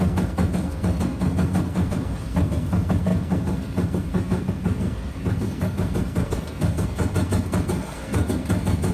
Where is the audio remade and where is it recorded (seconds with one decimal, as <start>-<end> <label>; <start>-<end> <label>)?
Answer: 0.0-8.9 remade

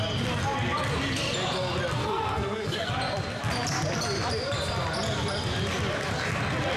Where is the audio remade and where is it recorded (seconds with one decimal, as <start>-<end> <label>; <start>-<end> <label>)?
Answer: 0.0-2.0 recorded; 2.0-2.9 remade; 2.9-6.8 recorded

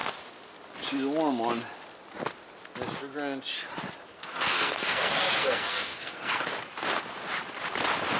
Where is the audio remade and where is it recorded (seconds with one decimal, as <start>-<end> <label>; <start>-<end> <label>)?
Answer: 0.0-4.1 recorded; 4.1-6.4 remade; 6.4-8.2 recorded

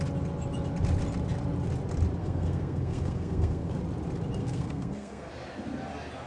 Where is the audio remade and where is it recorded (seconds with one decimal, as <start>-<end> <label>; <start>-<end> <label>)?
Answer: 0.0-2.2 recorded; 2.2-3.8 remade; 3.8-4.4 recorded; 4.4-5.3 remade; 5.3-6.3 recorded

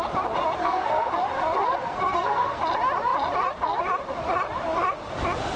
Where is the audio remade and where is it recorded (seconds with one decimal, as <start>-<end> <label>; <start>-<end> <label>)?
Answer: 0.0-0.6 recorded; 0.6-1.1 remade; 1.1-1.8 recorded; 1.8-2.6 remade; 2.6-5.6 recorded